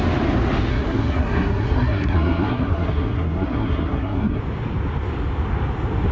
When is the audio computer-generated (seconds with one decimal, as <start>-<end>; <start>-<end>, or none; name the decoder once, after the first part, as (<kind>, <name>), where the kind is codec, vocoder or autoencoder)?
0.7-4.4 (codec, SNAC)